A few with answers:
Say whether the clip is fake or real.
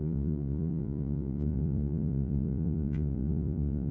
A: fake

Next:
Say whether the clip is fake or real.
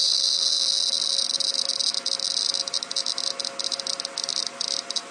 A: real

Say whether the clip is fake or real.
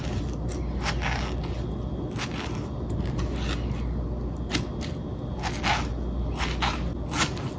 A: real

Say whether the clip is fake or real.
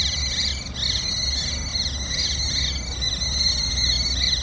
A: real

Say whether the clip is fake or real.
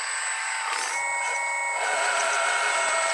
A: real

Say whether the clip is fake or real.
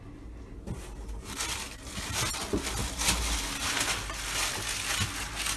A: real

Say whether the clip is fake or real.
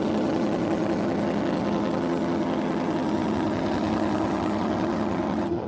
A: fake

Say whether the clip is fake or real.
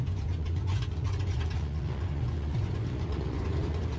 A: fake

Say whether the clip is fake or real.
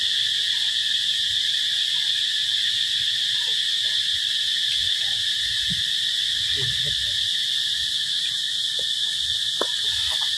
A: real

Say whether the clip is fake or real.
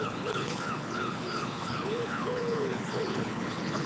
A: fake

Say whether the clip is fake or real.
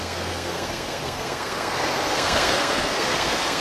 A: fake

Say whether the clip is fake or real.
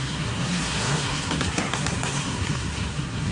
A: fake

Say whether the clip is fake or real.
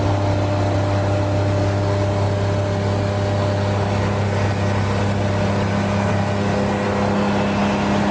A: real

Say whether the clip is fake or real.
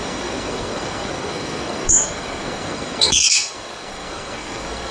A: fake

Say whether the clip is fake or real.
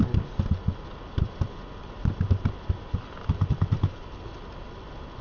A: real